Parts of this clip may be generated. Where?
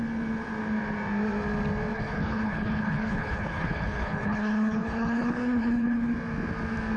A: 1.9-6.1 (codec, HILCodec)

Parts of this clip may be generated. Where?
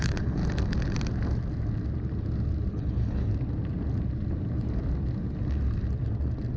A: 0.0-0.4 (codec, HILCodec); 2.7-3.3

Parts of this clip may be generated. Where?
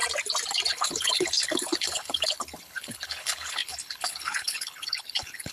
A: 0.7-5.5 (codec, HILCodec)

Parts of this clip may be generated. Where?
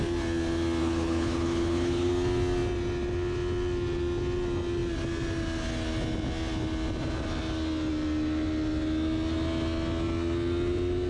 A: 0.8-2.1 (codec, HILCodec)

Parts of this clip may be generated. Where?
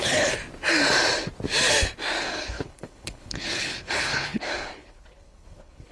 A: 0.0-0.4 (codec, HILCodec); 2.2-5.9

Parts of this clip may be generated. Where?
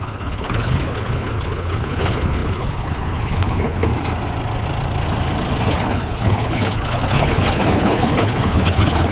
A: 0.0-3.9 (codec, HILCodec); 5.7-9.1